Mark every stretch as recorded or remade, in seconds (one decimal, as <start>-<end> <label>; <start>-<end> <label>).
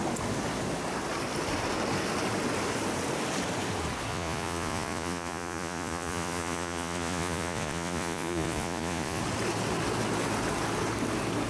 0.0-4.1 recorded; 4.1-9.2 remade; 9.2-11.5 recorded